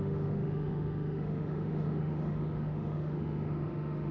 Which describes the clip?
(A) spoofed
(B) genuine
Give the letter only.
A